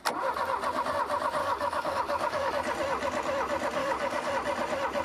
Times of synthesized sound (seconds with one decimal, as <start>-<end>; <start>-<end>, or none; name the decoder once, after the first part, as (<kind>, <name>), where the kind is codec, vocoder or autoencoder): 1.4-2.5 (codec, DAC); 3.8-4.3

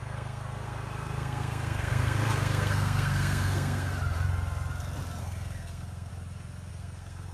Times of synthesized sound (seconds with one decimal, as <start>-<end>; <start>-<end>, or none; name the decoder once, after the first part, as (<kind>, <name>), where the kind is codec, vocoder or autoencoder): 0.0-3.9 (codec, SNAC); 5.2-6.1; 6.7-7.3